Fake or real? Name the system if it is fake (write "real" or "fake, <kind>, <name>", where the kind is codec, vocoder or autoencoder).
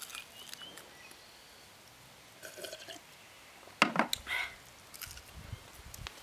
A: real